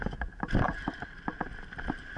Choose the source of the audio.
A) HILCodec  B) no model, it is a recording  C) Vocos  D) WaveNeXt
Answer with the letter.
B